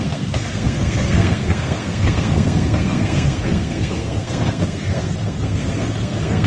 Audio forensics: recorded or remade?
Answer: remade